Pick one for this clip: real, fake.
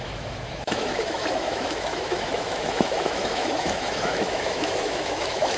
fake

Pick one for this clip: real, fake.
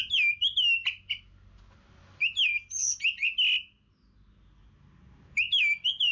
real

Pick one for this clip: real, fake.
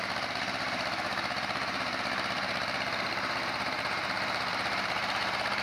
fake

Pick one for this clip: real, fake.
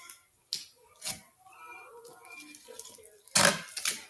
real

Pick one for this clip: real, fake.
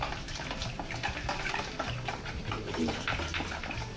fake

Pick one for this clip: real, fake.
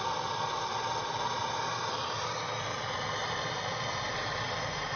real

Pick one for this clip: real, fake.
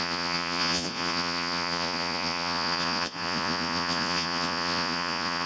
fake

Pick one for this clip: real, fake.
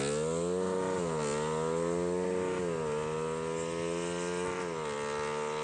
real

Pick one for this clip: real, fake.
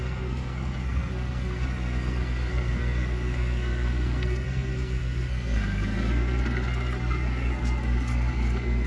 fake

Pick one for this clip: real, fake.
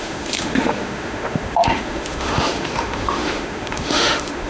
fake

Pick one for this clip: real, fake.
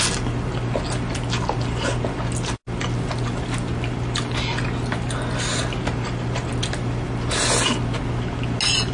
real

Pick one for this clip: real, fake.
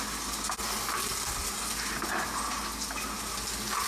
real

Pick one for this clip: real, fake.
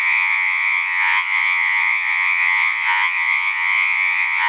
fake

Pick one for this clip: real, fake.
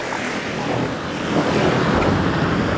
real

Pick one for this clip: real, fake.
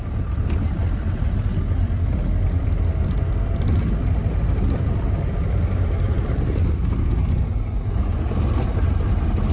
real